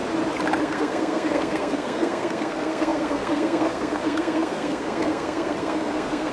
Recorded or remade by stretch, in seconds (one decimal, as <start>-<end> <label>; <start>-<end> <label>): 0.0-0.6 recorded; 0.6-6.3 remade